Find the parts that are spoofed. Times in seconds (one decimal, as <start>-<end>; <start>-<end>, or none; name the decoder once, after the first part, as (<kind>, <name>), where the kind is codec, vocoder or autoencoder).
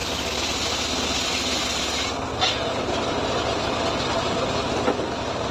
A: none